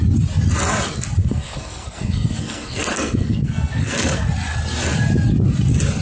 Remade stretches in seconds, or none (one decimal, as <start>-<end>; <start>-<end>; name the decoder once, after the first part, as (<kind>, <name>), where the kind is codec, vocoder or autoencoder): 1.2-4.2 (codec, SNAC)